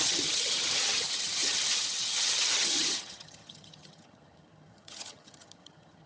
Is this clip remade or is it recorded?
remade